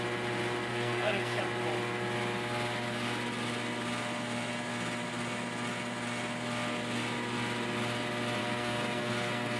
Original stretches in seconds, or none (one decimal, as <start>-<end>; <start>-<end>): 0.0-0.7; 1.4-8.4